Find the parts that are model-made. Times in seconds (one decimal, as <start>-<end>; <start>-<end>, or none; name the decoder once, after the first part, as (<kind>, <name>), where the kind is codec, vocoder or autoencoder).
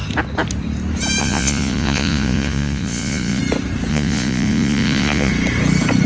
1.2-3.4 (vocoder, Vocos); 3.9-5.3